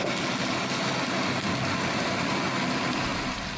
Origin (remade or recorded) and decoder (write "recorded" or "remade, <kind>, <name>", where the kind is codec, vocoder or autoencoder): recorded